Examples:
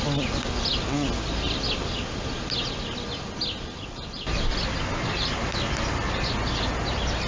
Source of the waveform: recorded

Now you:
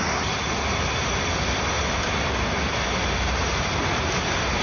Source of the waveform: recorded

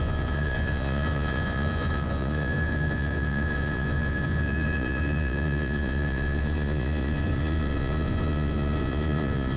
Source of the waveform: remade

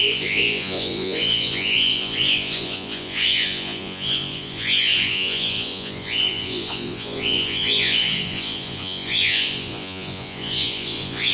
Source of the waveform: remade